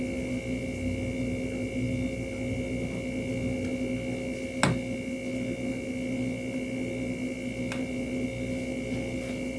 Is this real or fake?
real